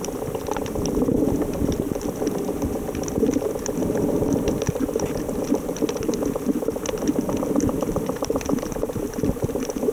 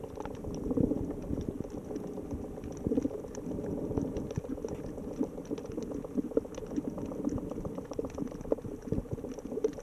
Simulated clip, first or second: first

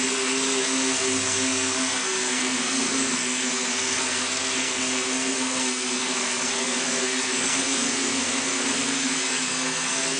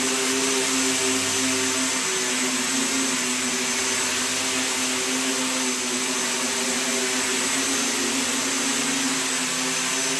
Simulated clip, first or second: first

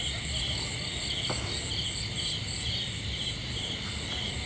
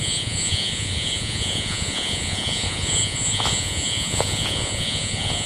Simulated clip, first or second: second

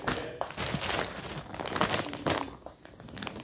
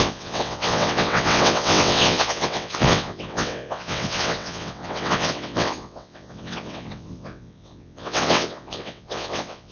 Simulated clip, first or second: second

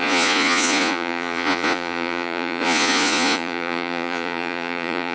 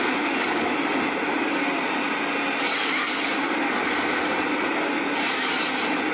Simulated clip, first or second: first